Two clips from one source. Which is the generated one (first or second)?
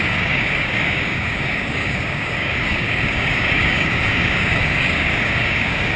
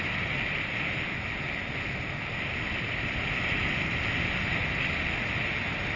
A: first